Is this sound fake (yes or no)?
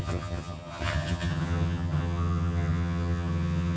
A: yes